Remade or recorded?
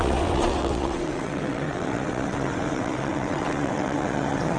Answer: remade